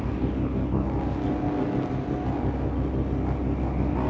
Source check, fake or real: real